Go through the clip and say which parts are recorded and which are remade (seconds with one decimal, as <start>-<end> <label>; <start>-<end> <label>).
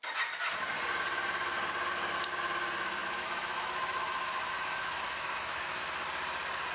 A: 0.0-3.0 recorded; 3.0-5.8 remade; 5.8-6.7 recorded